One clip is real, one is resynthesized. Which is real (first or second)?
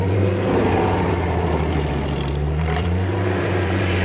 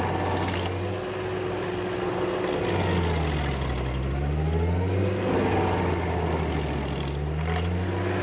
second